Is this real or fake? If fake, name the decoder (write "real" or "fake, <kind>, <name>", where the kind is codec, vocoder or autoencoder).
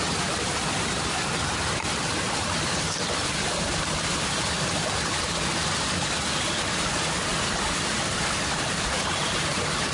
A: fake, vocoder, BigVGAN v2